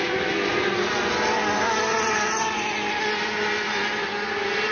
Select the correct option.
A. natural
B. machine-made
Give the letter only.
A